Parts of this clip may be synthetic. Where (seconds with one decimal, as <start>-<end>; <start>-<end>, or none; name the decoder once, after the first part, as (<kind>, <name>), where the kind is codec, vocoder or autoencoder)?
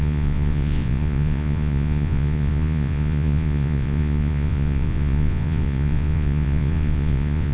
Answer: 0.0-7.5 (vocoder, Vocos)